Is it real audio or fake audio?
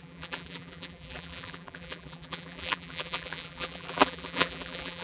fake